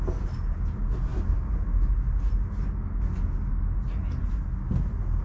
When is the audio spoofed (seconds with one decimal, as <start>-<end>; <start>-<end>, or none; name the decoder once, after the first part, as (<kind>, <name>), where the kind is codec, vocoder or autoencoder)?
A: none